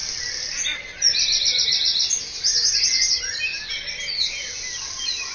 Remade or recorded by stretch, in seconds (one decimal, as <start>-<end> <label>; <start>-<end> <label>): 0.0-5.3 recorded